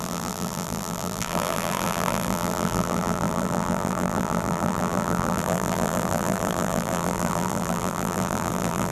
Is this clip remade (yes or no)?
yes